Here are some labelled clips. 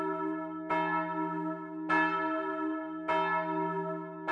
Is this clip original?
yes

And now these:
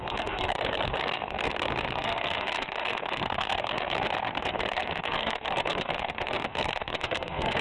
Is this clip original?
no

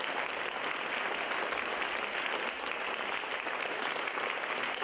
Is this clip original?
yes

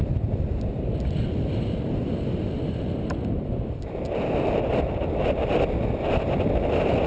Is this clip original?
yes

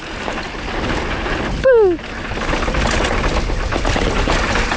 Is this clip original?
yes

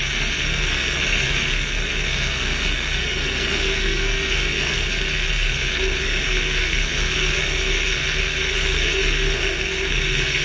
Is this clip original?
no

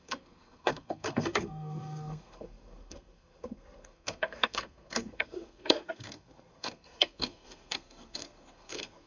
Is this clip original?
no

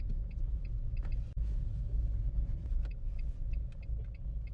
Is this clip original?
yes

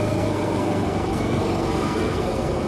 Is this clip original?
no